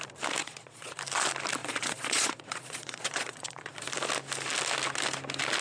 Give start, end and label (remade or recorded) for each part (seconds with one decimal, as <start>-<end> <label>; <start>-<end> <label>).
0.0-0.4 recorded; 0.4-1.0 remade; 1.0-1.6 recorded; 1.6-3.9 remade; 3.9-5.6 recorded